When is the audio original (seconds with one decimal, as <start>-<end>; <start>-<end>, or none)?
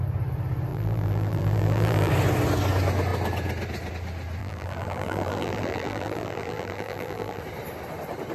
0.0-0.7; 2.1-4.4; 7.4-8.3